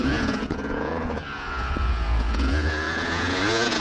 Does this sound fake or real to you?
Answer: fake